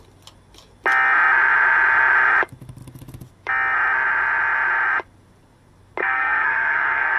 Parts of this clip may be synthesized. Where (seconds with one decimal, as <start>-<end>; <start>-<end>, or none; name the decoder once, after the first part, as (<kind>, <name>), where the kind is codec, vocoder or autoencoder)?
6.0-7.2 (codec, SNAC)